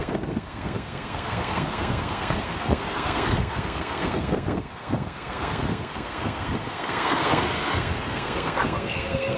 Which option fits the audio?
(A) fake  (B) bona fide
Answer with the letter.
A